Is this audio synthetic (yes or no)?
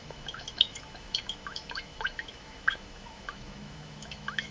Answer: yes